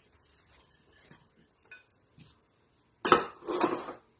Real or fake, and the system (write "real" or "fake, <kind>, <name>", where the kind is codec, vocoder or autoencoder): real